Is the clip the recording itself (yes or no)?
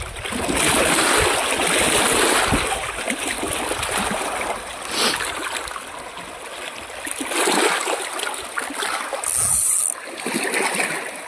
yes